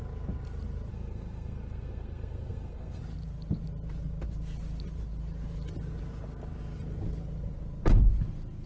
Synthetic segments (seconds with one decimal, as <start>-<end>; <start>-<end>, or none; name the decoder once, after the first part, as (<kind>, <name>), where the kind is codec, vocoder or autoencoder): 0.9-3.0 (codec, SNAC)